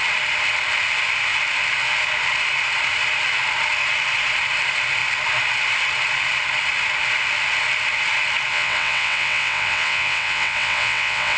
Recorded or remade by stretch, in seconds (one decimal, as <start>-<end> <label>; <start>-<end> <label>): 0.0-8.5 recorded; 8.5-11.4 remade